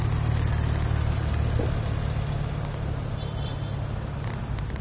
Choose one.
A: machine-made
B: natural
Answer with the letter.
B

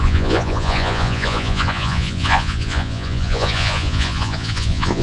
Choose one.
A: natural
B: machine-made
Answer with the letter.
B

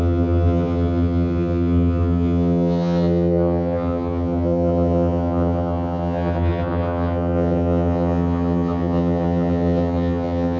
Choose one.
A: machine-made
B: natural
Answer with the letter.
A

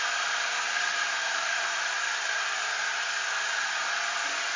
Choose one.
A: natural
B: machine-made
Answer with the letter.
A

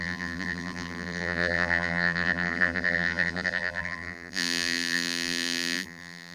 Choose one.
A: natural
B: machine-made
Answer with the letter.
B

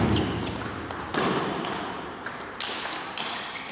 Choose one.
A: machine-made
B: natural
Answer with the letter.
B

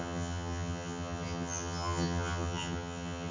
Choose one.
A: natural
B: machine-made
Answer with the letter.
B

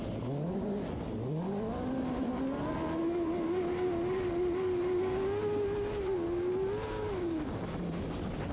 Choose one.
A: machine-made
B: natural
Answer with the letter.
B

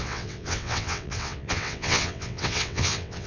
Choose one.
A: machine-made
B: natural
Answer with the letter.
A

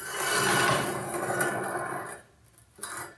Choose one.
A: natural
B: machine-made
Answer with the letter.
A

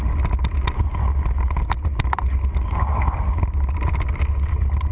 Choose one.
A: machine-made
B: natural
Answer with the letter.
B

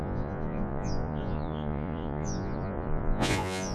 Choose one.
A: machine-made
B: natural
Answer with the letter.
A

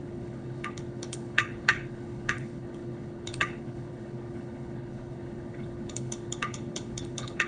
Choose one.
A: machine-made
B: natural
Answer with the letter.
A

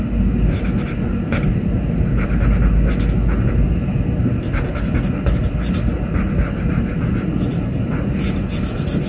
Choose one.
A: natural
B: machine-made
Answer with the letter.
A